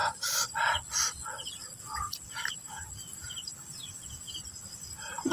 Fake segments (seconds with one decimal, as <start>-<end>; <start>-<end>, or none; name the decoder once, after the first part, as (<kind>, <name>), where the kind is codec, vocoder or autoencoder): 1.8-5.3 (vocoder, BigVGAN v2)